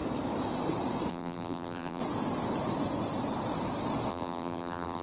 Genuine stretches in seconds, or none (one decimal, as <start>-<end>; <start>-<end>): 0.0-1.1; 2.0-4.1